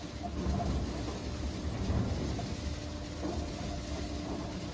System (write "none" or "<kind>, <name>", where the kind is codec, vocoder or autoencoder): none